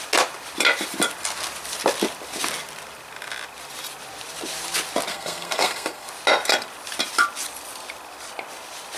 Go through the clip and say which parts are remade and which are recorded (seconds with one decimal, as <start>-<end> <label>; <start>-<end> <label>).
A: 0.0-5.1 recorded; 5.1-6.1 remade; 6.1-9.0 recorded